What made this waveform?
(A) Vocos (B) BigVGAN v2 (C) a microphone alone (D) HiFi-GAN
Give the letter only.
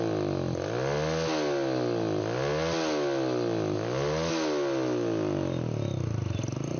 C